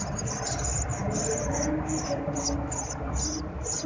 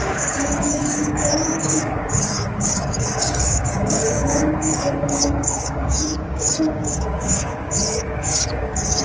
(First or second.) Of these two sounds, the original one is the first